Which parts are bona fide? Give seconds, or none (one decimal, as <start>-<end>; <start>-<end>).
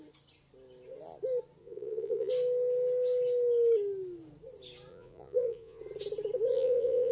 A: 0.0-1.6; 2.3-4.9; 5.8-6.5